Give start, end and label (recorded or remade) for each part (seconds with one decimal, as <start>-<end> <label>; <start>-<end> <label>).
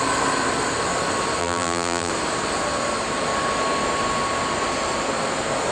0.0-1.4 recorded; 1.4-2.1 remade; 2.1-5.7 recorded